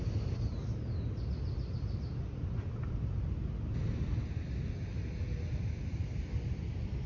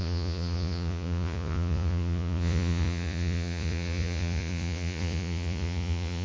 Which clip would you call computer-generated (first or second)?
second